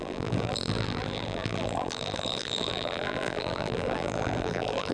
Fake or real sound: fake